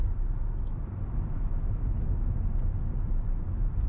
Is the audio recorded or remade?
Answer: recorded